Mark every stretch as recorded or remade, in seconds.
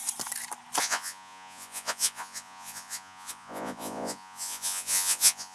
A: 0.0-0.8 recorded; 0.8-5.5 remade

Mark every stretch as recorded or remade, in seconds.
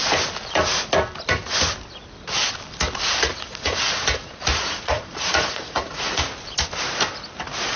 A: 0.0-3.3 recorded; 3.3-6.3 remade; 6.3-7.8 recorded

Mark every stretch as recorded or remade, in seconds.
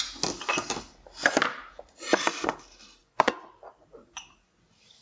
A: 0.0-3.0 recorded; 3.0-3.5 remade; 3.5-5.0 recorded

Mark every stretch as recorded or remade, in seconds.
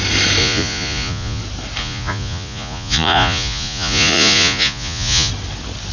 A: 0.0-0.4 recorded; 0.4-1.4 remade; 1.4-1.8 recorded; 1.8-5.3 remade; 5.3-5.9 recorded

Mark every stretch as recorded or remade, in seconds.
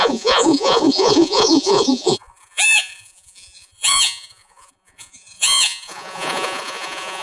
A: 0.0-7.2 remade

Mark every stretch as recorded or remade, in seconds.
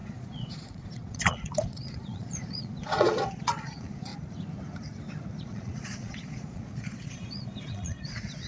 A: 0.0-4.1 remade; 4.1-5.4 recorded; 5.4-8.5 remade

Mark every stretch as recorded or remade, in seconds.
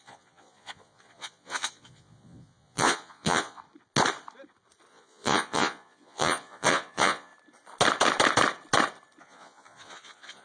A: 0.0-3.6 remade; 3.6-4.9 recorded; 4.9-7.3 remade; 7.3-9.2 recorded; 9.2-10.4 remade